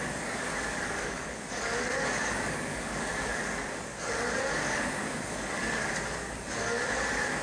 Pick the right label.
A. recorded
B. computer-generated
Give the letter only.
B